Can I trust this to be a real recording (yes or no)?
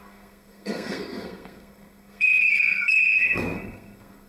no